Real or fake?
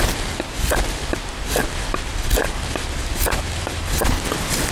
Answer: real